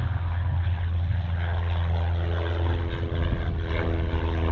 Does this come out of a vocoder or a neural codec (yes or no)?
no